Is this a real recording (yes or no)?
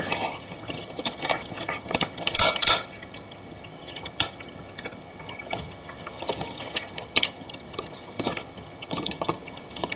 no